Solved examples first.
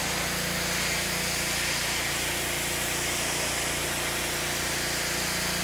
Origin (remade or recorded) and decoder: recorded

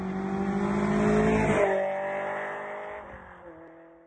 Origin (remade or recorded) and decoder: recorded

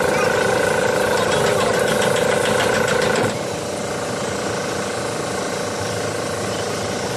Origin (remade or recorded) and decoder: recorded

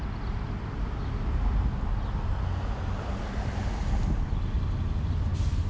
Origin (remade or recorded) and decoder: recorded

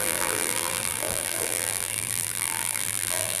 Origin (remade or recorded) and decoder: remade, vocoder, BigVGAN v2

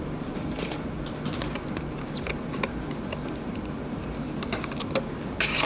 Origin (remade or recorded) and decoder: recorded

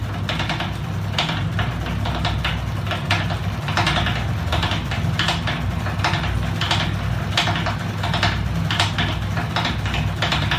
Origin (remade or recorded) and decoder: recorded